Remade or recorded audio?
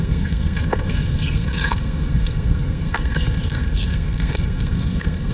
remade